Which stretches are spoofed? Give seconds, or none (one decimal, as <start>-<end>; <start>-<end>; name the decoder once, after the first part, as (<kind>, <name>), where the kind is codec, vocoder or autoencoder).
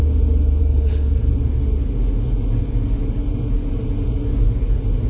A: 0.6-1.2 (codec, SNAC)